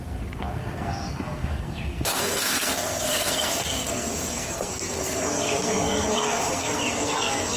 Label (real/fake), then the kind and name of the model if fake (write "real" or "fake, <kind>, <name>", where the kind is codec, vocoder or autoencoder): fake, codec, SNAC